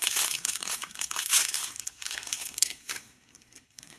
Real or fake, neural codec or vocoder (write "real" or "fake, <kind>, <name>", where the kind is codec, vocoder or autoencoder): fake, codec, SNAC